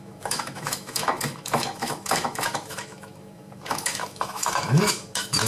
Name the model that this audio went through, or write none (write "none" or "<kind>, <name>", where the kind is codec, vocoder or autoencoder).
autoencoder, DAC-VAE